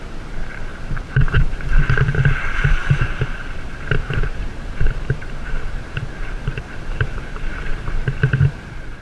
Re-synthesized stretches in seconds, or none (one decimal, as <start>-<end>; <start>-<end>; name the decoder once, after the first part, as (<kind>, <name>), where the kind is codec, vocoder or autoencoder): 0.0-9.0 (vocoder, BigVGAN v2)